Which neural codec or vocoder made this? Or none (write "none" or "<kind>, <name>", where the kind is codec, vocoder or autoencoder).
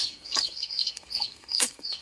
codec, SNAC